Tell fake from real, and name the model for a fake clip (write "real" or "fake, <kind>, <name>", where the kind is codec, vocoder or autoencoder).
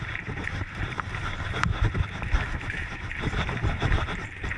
fake, vocoder, BigVGAN v2